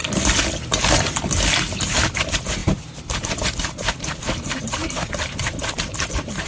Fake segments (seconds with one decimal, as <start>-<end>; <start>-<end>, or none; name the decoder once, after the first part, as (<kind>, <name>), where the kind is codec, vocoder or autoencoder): 2.6-4.2 (vocoder, BigVGAN v2); 4.8-5.8